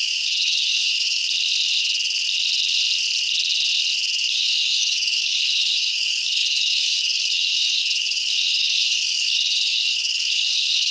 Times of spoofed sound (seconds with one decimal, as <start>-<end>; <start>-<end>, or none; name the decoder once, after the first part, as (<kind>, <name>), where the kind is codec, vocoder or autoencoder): 0.0-1.2 (codec, DAC); 4.3-10.9